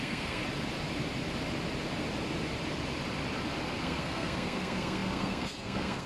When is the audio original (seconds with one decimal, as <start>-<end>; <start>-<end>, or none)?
0.4-3.8